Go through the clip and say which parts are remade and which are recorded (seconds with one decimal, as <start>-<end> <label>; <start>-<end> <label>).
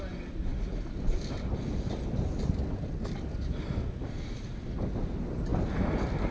0.0-6.3 recorded